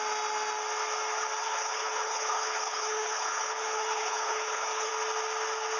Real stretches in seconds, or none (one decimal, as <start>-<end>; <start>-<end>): 0.0-1.4; 4.9-5.8